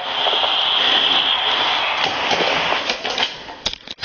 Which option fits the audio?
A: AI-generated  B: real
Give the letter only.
B